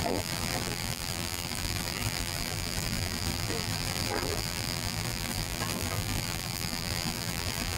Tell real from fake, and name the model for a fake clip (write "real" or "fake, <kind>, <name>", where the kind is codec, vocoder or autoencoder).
fake, vocoder, BigVGAN v2